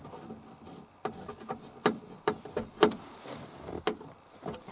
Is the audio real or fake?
real